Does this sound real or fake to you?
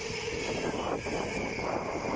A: real